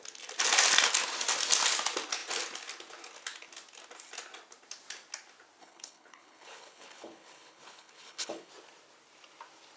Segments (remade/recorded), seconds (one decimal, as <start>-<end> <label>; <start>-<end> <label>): 0.0-5.6 recorded; 5.6-8.5 remade; 8.5-9.8 recorded